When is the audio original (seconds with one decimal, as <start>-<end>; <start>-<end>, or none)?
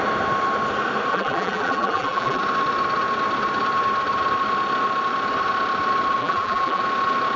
0.0-1.1; 2.4-6.2; 6.8-7.4